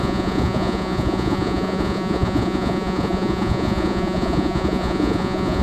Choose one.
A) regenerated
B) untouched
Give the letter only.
A